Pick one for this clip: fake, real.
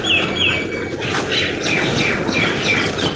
real